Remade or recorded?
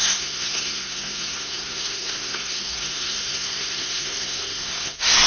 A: remade